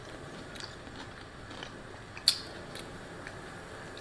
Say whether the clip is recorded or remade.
recorded